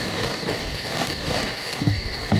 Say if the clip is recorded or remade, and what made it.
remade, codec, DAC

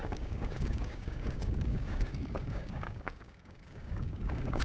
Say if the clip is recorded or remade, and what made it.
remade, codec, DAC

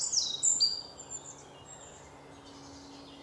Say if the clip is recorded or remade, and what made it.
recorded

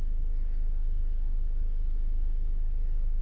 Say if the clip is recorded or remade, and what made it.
remade, codec, DAC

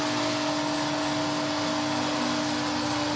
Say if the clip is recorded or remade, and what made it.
recorded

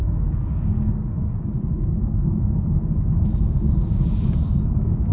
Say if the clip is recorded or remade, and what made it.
remade, codec, DAC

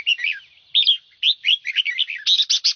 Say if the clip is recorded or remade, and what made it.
recorded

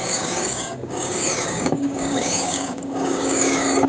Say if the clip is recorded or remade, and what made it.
remade, codec, DAC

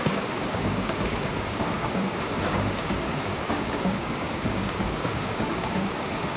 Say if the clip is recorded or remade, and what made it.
remade, codec, DAC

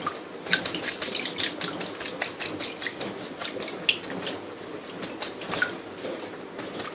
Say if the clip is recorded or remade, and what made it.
recorded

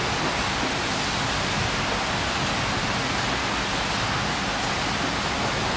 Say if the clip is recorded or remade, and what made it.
recorded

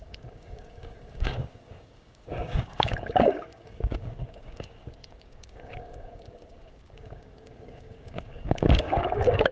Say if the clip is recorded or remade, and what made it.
remade, codec, DAC